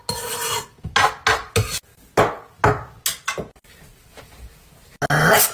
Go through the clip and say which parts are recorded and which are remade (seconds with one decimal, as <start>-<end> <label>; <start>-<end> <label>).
0.0-5.5 recorded